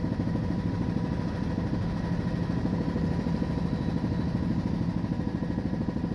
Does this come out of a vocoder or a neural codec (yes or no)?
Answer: no